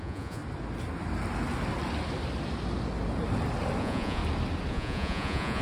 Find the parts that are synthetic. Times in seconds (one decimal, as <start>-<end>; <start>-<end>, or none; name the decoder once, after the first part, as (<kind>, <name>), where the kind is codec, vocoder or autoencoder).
0.0-0.4 (vocoder, Vocos); 3.8-4.2; 4.7-5.6